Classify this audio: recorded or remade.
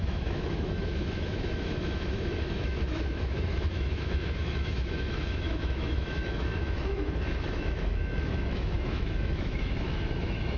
remade